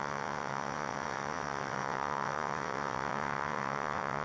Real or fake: fake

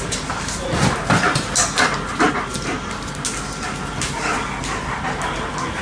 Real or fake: real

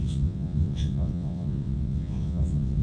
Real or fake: fake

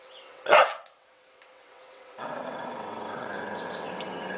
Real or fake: fake